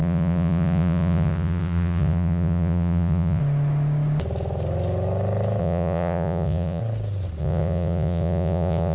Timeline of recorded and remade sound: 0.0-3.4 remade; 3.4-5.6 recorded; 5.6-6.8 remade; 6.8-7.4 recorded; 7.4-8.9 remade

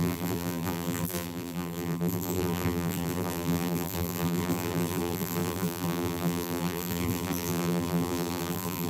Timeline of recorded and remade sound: 0.0-8.9 remade

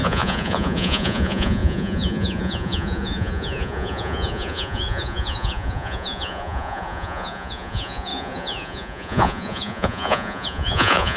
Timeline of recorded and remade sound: 0.0-11.2 remade

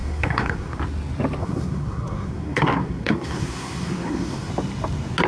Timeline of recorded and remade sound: 0.0-0.8 remade; 0.8-1.4 recorded; 1.4-4.5 remade; 4.5-5.3 recorded

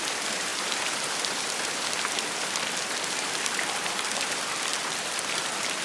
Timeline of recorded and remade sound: 0.0-5.8 remade

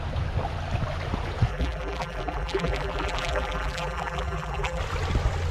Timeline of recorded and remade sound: 0.0-1.5 recorded; 1.5-4.8 remade; 4.8-5.5 recorded

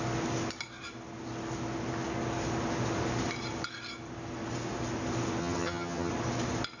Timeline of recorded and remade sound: 0.0-5.4 recorded; 5.4-6.1 remade; 6.1-6.8 recorded